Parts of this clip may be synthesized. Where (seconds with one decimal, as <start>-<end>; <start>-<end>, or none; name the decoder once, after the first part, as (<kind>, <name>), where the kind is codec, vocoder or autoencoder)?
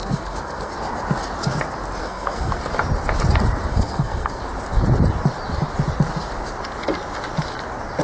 0.0-0.7 (codec, SNAC); 2.0-2.6; 3.7-4.4